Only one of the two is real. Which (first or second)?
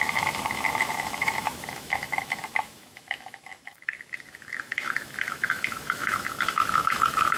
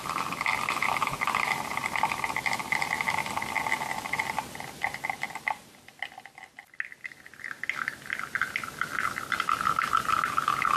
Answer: second